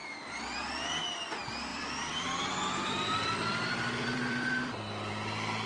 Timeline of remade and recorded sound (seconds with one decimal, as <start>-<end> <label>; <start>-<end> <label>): 0.0-1.0 remade; 1.0-1.7 recorded; 1.7-5.1 remade; 5.1-5.7 recorded